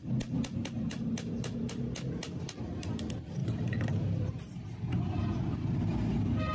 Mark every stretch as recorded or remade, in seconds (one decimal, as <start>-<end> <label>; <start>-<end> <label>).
0.0-3.4 recorded; 3.4-4.0 remade; 4.0-6.5 recorded